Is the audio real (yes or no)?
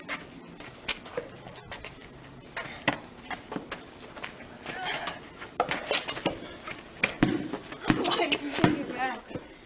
yes